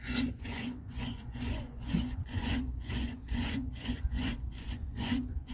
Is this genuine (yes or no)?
no